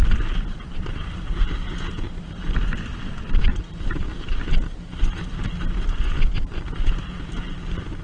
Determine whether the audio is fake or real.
real